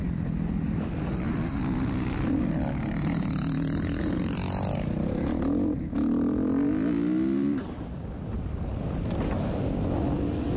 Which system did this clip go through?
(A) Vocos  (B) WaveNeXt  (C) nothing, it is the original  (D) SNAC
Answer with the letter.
C